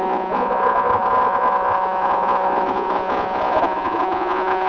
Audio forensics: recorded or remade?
remade